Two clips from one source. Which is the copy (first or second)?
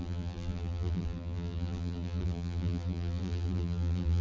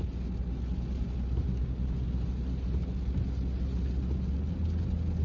first